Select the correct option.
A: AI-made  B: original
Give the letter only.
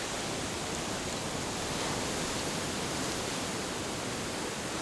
B